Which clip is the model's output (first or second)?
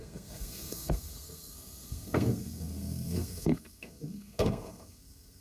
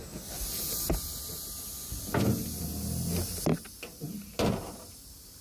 first